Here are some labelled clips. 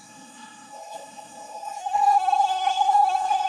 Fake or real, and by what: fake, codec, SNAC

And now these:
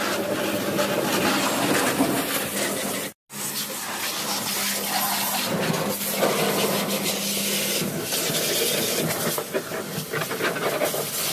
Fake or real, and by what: real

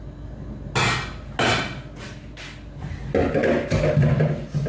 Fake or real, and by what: real